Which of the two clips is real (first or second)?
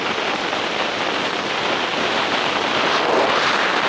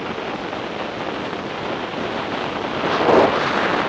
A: second